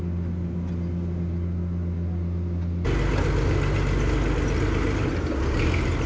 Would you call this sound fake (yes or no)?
no